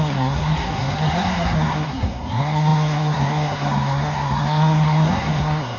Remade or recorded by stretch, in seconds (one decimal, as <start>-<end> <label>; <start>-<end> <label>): 0.0-5.8 remade